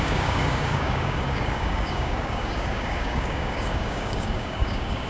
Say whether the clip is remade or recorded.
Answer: remade